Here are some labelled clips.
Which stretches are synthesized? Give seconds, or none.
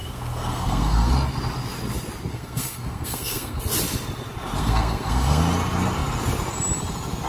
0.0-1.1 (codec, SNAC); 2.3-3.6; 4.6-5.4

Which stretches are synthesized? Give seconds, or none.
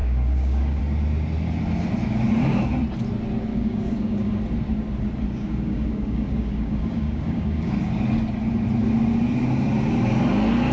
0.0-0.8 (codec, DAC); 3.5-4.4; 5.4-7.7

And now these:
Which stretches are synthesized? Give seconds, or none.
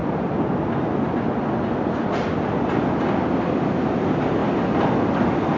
none